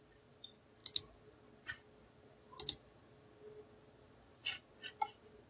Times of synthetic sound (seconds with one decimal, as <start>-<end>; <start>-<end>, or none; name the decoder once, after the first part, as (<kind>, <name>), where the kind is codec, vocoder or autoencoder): none